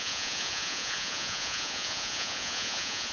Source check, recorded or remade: remade